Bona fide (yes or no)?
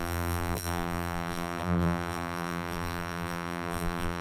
no